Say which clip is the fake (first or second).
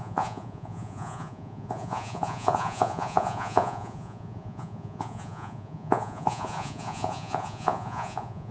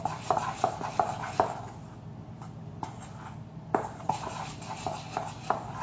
first